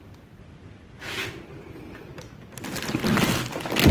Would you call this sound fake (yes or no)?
no